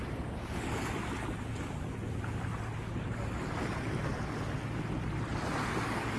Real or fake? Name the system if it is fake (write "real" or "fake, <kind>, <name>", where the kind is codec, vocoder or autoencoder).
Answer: real